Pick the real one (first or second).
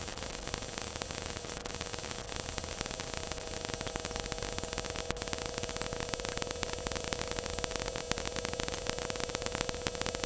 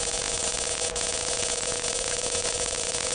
first